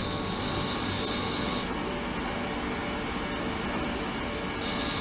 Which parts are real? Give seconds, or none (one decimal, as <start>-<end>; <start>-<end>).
0.0-5.0

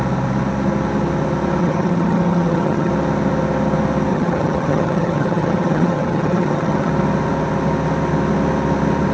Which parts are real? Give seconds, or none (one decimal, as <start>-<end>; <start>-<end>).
0.0-1.6; 2.9-4.1; 6.9-9.1

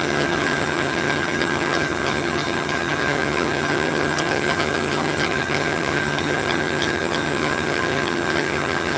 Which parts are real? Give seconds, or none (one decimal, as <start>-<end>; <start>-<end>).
none